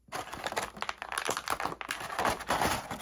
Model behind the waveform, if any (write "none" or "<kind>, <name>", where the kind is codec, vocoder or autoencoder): none